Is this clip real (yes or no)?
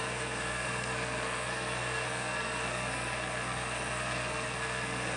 no